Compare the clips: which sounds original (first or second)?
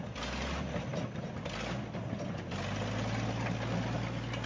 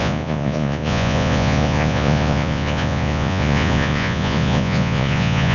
first